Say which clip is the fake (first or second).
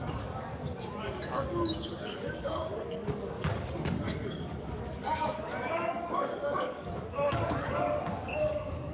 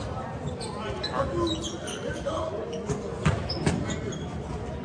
first